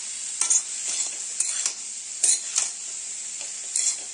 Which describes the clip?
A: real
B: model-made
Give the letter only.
A